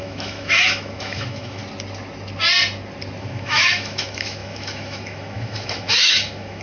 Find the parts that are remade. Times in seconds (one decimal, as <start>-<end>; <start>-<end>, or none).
0.0-1.6; 3.2-6.6